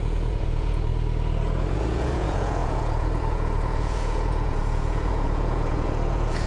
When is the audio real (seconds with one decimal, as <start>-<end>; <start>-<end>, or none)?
0.9-1.7